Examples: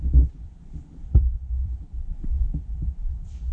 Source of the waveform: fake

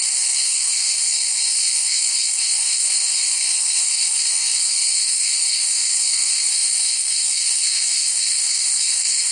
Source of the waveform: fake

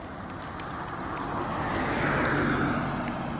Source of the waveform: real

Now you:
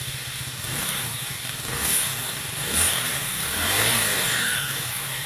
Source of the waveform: fake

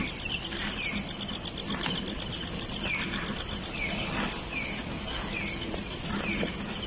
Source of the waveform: real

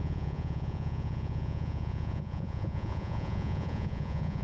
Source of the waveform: fake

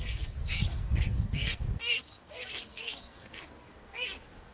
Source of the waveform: fake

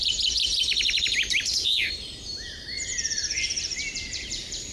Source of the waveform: fake